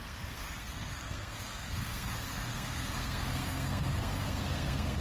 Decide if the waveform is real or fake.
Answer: fake